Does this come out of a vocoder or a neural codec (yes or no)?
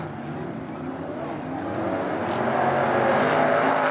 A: no